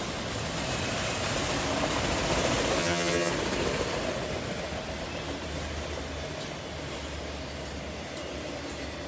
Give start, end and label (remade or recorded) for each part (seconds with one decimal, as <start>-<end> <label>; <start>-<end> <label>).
0.0-2.8 recorded; 2.8-3.3 remade; 3.3-9.1 recorded